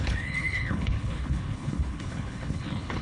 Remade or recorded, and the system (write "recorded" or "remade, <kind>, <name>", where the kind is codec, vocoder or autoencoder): remade, codec, HILCodec